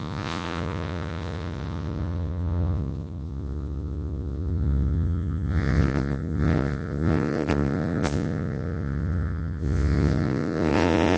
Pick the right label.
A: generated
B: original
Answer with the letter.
A